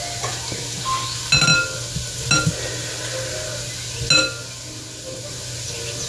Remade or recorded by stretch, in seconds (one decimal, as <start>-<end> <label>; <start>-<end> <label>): 0.0-6.1 recorded